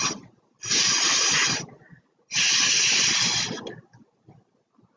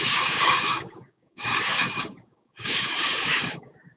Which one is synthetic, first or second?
second